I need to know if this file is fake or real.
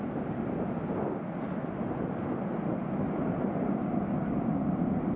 real